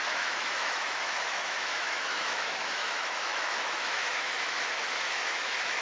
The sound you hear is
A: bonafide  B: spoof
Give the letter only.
B